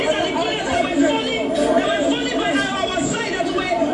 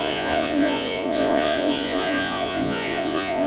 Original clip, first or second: first